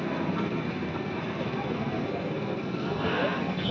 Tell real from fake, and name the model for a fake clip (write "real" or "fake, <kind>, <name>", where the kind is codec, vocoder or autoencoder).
fake, codec, SNAC